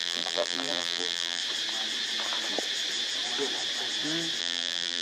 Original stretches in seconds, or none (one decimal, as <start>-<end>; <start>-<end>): 1.4-4.4